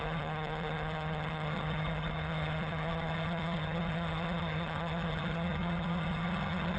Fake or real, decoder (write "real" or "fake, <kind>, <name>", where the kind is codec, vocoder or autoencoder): fake, vocoder, HiFi-GAN